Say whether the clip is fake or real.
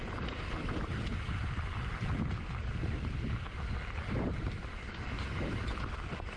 fake